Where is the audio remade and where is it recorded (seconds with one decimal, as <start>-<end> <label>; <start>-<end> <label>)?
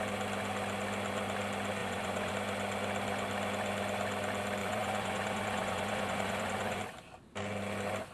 0.0-1.8 recorded; 1.8-2.3 remade; 2.3-4.6 recorded; 4.6-6.8 remade; 6.8-8.1 recorded